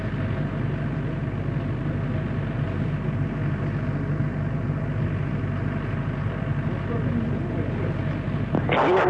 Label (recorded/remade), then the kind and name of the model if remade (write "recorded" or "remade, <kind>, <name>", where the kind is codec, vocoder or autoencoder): recorded